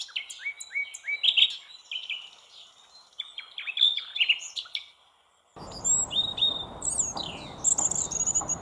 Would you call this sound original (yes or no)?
yes